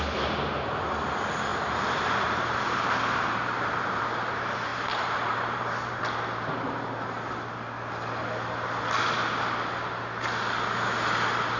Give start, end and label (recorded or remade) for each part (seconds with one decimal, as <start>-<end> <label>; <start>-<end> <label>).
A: 0.0-1.5 recorded; 1.5-4.0 remade; 4.0-4.7 recorded; 4.7-6.0 remade; 6.0-11.6 recorded